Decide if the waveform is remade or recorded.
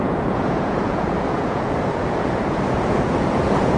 remade